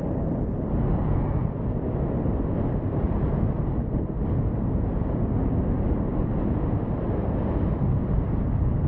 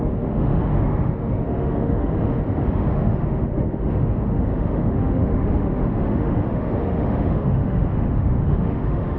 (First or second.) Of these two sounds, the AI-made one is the second